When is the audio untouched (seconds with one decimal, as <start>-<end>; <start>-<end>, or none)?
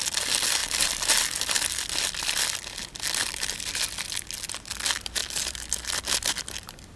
0.0-0.6; 2.4-5.2; 6.0-7.0